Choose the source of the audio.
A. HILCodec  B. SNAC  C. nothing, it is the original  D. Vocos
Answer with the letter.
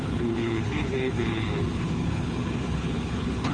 A